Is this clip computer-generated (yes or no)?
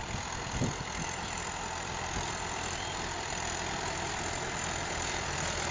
yes